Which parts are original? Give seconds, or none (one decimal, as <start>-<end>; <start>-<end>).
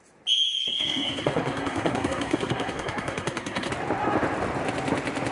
0.0-0.6; 3.7-5.3